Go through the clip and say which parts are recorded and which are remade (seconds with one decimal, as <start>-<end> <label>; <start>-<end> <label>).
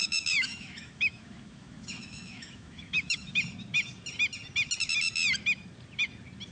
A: 0.0-3.4 remade; 3.4-6.5 recorded